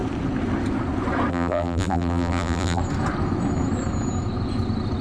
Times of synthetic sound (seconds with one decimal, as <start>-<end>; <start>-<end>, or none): 1.3-2.8